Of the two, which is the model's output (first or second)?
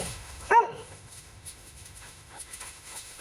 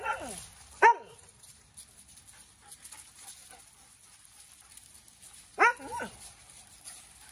first